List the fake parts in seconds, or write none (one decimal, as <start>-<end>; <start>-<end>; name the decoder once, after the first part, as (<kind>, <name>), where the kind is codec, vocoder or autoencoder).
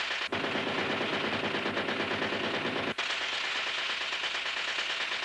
none